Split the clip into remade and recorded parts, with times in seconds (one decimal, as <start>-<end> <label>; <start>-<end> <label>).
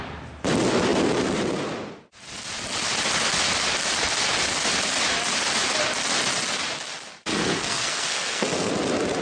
0.0-7.3 recorded; 7.3-8.7 remade; 8.7-9.2 recorded